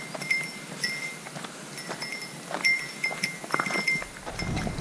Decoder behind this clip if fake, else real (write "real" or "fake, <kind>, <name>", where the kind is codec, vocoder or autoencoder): real